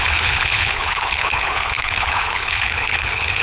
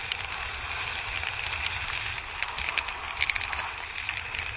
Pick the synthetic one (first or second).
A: first